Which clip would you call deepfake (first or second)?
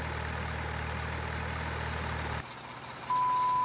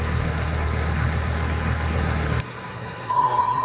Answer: second